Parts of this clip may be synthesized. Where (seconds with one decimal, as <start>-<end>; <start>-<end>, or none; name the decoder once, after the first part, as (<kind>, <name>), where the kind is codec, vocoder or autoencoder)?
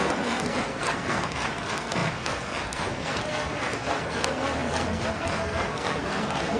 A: 0.0-6.6 (codec, SNAC)